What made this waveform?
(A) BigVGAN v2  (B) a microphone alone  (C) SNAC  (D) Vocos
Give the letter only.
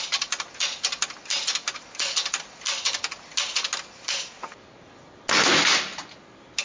B